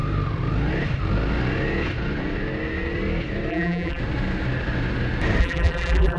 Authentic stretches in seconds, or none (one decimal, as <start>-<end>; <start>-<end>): 0.0-3.5; 4.0-5.4